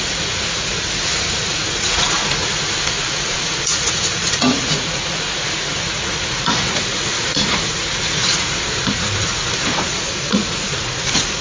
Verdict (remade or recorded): remade